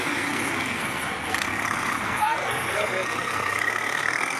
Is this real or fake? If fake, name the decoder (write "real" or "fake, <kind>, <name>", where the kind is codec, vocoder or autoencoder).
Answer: fake, codec, SNAC